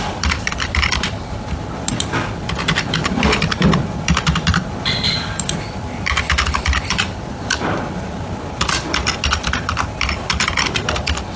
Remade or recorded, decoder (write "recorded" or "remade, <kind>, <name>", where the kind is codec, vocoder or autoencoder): remade, vocoder, BigVGAN v2